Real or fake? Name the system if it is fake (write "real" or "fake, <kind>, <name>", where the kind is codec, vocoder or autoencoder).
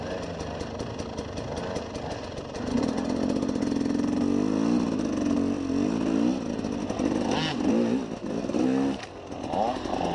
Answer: real